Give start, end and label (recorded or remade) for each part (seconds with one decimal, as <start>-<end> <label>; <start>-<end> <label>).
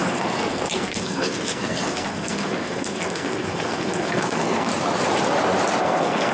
0.0-4.7 remade; 4.7-5.8 recorded; 5.8-6.3 remade